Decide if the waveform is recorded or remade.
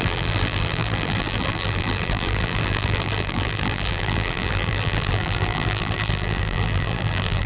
remade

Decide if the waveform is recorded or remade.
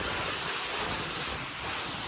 recorded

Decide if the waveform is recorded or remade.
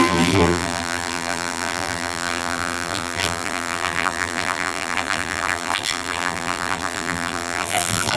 remade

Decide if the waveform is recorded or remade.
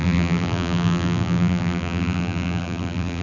remade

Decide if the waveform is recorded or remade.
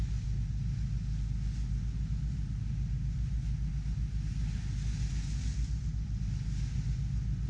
recorded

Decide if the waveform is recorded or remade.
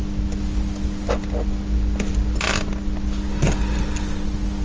recorded